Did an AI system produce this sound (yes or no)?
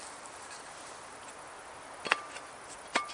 no